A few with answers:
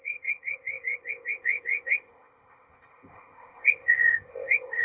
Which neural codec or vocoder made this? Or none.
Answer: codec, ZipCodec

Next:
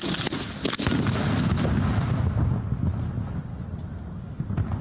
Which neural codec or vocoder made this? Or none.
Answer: none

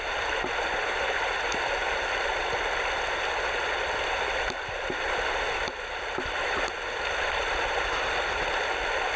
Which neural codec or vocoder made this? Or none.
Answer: none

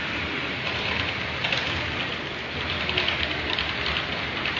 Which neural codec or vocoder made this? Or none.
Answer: none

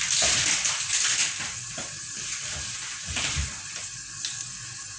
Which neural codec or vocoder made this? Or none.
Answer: none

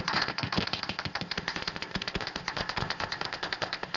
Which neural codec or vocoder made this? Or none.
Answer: codec, ZipCodec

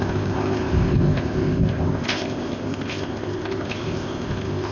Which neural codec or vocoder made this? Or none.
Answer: codec, ZipCodec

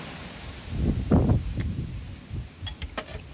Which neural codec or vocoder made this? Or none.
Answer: none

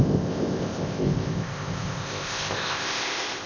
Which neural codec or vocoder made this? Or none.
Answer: codec, ZipCodec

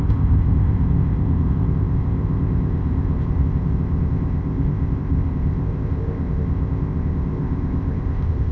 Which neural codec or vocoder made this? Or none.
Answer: codec, ZipCodec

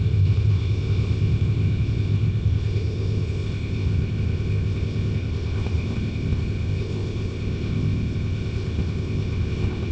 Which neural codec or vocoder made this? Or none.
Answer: codec, ZipCodec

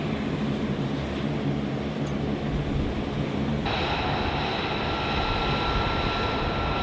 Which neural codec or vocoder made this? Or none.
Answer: none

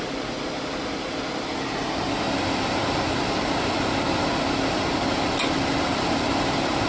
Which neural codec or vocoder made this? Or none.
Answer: none